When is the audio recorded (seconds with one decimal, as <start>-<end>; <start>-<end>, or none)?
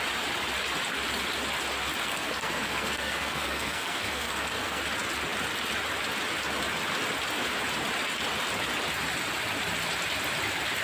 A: 0.0-2.0; 4.8-10.8